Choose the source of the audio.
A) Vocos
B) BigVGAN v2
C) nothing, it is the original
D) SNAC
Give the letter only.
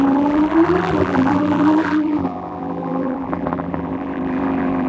B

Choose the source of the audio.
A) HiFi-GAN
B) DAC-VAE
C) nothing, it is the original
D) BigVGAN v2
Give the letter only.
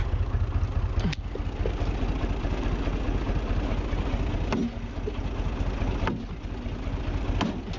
C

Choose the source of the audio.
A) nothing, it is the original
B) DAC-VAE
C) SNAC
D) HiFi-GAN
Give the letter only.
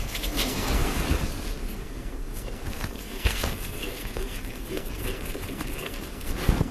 C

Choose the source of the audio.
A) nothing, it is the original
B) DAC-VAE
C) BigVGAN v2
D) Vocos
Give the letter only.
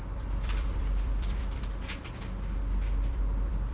C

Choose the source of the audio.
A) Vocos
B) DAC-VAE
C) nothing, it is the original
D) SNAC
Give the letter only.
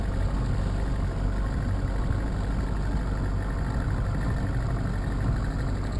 C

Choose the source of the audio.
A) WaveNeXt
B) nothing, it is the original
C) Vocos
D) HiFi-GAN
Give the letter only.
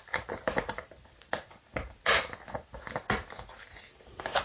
B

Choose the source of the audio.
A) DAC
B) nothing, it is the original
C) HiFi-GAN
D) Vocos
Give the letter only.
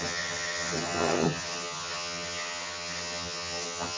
C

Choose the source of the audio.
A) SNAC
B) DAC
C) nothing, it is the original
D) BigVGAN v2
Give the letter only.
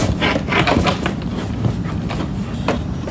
C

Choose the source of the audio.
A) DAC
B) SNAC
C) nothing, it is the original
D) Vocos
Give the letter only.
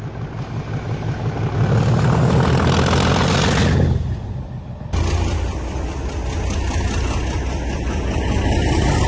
C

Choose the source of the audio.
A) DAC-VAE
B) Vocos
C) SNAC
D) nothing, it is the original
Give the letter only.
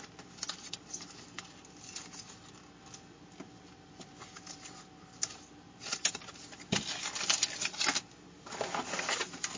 D